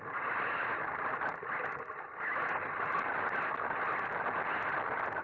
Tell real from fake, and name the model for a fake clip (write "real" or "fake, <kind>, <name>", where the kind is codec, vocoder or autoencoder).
real